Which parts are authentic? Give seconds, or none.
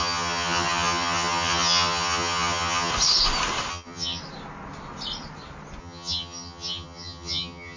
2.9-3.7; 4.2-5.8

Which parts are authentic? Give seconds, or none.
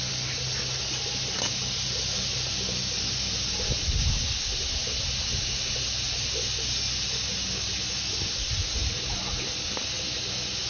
0.0-10.7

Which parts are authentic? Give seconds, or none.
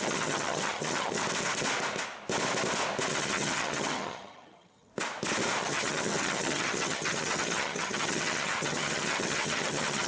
1.2-3.1; 4.9-5.6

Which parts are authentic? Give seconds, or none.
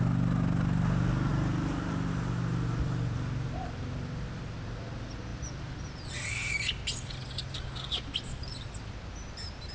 0.0-9.7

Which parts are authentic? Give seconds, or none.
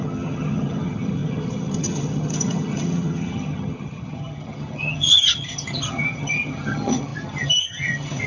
none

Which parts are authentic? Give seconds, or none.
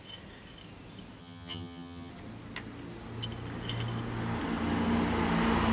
0.0-1.2; 2.1-5.7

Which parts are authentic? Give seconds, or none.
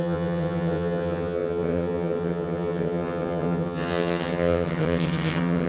none